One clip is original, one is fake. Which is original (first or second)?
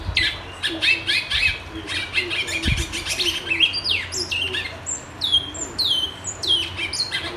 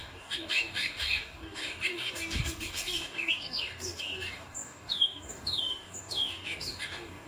first